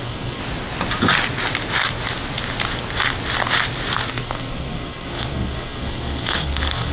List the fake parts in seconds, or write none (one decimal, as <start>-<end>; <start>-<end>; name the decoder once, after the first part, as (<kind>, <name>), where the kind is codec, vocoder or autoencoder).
0.0-0.4 (codec, SNAC); 4.1-6.9

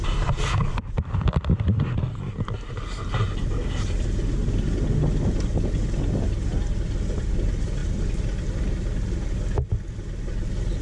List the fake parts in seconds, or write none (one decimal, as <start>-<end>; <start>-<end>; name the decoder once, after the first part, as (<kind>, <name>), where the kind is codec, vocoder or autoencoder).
none

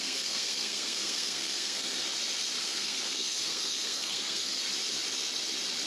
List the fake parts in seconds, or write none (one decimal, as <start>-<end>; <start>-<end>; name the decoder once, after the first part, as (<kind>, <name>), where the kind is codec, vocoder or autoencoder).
0.0-2.0 (codec, SNAC); 2.6-4.6

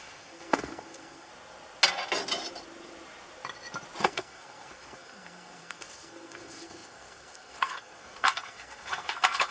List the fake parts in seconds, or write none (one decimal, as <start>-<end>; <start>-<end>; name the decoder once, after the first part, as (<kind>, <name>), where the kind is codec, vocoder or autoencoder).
0.0-1.3 (codec, SNAC); 4.0-9.5

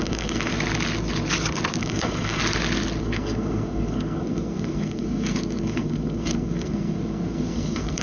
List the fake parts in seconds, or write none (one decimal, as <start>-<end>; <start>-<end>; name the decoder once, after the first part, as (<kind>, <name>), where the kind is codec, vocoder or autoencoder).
0.0-0.5 (codec, SNAC); 1.8-2.4; 3.0-8.0